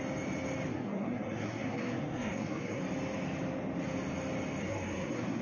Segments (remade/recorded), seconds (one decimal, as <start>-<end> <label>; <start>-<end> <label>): 0.0-0.7 recorded; 0.7-2.8 remade; 2.8-4.6 recorded; 4.6-5.4 remade